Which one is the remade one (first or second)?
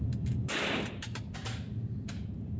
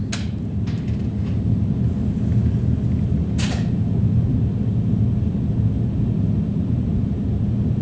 first